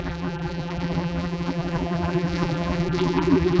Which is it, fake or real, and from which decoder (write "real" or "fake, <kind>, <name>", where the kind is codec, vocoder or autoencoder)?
fake, vocoder, BigVGAN v2